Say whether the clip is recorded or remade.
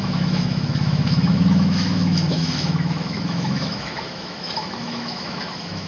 remade